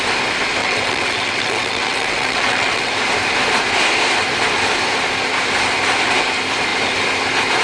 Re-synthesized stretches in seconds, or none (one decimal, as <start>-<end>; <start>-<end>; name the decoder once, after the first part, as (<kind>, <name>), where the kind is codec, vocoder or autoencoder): 0.6-2.9 (vocoder, WaveNeXt)